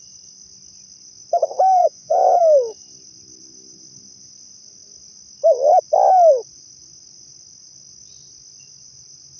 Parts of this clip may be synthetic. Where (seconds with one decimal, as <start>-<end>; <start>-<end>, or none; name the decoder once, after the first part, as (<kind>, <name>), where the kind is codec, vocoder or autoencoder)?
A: 1.8-2.4 (vocoder, Vocos)